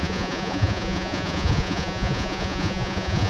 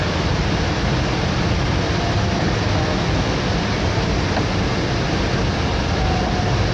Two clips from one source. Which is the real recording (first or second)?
second